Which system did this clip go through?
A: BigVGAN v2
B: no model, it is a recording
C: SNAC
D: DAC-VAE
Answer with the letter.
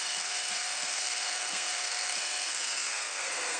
C